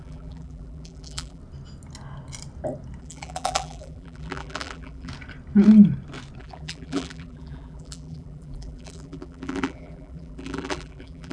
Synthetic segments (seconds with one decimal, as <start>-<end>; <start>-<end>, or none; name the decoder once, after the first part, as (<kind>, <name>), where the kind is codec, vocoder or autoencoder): 0.0-1.4 (vocoder, BigVGAN v2); 3.0-5.1; 6.4-11.3